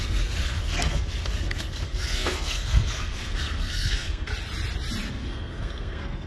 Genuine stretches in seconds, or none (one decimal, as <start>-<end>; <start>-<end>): 4.3-5.1